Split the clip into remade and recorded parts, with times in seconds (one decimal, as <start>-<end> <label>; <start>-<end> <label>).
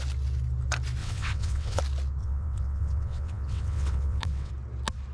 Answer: 0.0-1.0 recorded; 1.0-1.8 remade; 1.8-2.2 recorded; 2.2-4.5 remade; 4.5-5.1 recorded